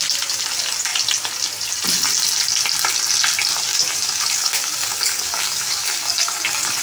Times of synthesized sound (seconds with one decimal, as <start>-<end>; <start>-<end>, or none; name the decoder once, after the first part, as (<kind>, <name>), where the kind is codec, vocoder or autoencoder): 3.7-6.8 (codec, DAC)